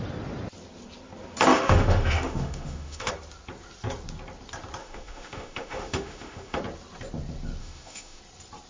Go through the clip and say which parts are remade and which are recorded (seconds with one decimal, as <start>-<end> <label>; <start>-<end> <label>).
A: 0.0-1.5 recorded; 1.5-3.1 remade; 3.1-4.8 recorded; 4.8-6.6 remade; 6.6-7.6 recorded; 7.6-8.2 remade; 8.2-8.7 recorded